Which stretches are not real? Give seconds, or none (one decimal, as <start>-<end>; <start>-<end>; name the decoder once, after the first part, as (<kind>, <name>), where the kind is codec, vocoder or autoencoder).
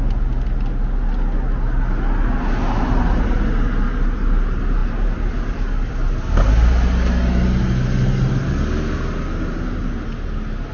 none